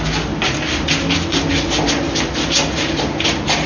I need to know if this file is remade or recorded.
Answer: recorded